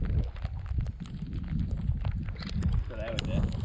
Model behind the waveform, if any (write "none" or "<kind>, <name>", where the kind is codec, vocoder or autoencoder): none